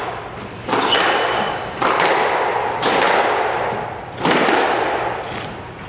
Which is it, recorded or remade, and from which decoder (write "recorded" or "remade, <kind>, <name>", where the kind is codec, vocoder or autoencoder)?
remade, vocoder, BigVGAN v2